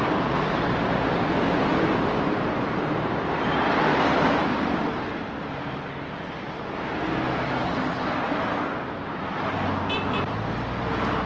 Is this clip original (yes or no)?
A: yes